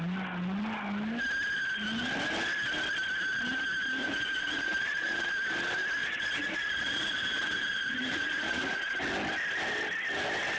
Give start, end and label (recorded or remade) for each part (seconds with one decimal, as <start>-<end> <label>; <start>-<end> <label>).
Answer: 0.0-4.0 recorded; 4.0-5.3 remade; 5.3-6.0 recorded; 6.0-8.9 remade; 8.9-10.6 recorded